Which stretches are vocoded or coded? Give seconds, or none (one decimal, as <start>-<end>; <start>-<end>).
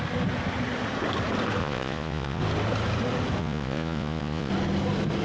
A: 1.6-2.4; 3.4-4.5